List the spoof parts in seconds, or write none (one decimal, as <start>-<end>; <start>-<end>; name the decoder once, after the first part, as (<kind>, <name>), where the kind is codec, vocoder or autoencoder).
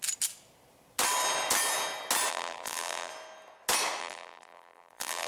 2.3-3.1 (vocoder, BigVGAN v2); 4.0-5.3